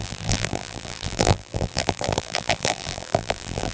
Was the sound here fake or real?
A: fake